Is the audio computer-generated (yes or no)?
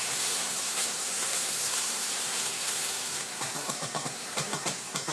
yes